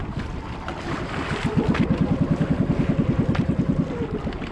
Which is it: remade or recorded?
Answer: recorded